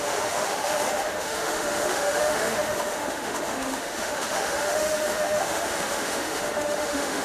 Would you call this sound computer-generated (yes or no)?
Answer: yes